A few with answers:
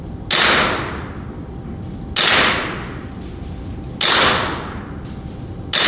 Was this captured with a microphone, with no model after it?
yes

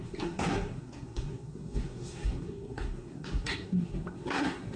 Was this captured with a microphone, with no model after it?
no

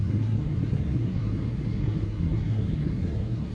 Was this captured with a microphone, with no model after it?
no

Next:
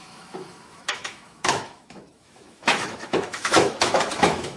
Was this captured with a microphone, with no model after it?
no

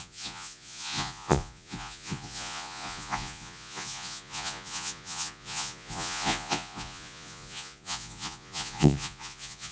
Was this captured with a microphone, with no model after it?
no